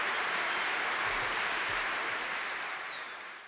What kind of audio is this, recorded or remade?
remade